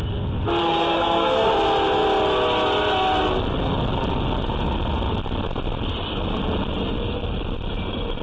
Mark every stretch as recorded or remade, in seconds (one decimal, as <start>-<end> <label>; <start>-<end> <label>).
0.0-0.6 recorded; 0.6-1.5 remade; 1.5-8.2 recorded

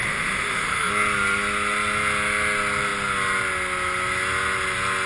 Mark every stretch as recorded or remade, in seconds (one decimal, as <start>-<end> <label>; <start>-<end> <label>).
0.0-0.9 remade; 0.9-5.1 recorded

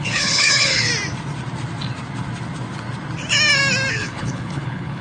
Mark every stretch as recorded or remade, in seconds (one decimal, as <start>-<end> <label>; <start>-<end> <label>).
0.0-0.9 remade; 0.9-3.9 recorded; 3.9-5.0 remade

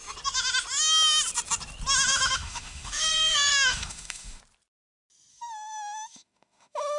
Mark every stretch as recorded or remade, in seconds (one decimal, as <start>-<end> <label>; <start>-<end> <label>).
0.0-2.1 recorded; 2.1-4.4 remade; 4.4-5.3 recorded; 5.3-7.0 remade